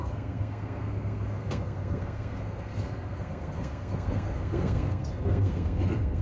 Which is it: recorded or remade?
remade